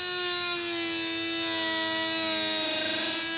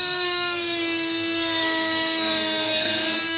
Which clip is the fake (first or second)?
second